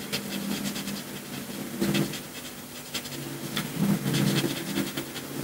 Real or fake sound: real